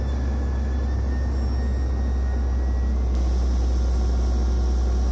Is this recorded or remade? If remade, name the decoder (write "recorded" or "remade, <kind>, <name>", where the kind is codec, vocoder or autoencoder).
recorded